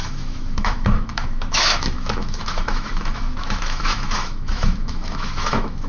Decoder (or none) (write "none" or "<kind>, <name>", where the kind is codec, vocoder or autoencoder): autoencoder, DAC-VAE